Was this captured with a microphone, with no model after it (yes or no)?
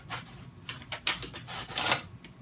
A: yes